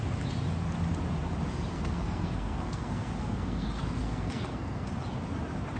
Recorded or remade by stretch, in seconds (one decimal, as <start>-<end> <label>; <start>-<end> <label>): 0.0-1.7 recorded; 1.7-4.9 remade; 4.9-5.8 recorded